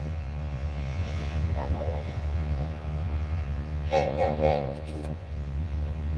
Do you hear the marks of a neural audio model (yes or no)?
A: yes